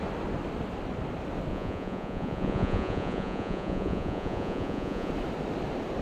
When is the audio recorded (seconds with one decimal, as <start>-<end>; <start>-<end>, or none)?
0.0-1.5; 5.1-6.0